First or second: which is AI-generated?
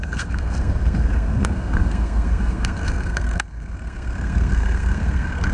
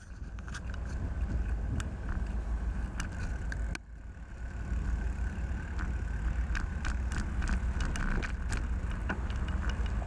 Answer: first